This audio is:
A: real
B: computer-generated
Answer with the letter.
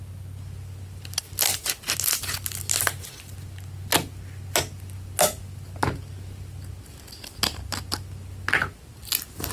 A